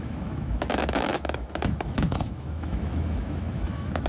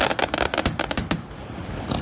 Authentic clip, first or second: second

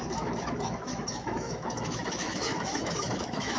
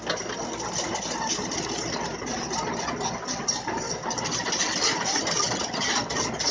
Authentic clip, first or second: second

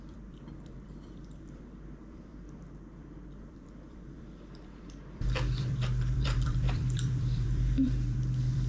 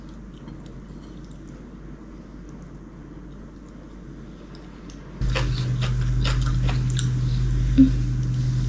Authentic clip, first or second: second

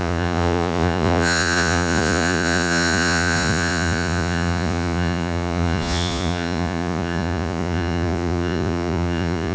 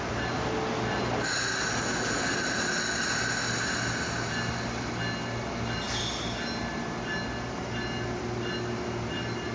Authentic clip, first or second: second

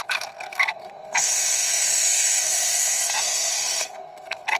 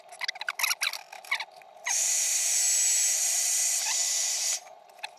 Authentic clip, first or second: second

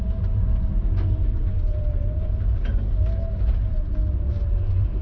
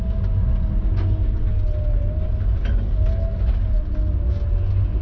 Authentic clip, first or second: second